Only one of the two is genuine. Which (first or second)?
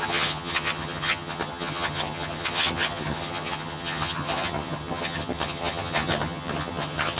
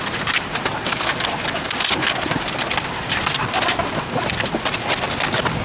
second